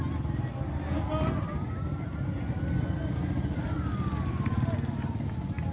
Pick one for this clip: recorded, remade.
recorded